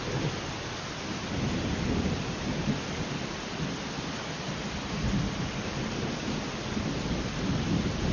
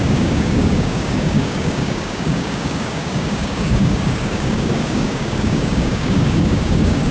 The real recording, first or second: first